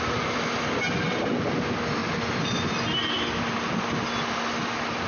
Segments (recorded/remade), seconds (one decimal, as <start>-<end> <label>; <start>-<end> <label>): 0.0-5.1 recorded